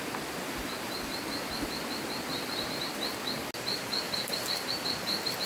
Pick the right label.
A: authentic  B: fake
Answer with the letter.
A